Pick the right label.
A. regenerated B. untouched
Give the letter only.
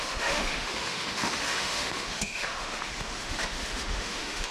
A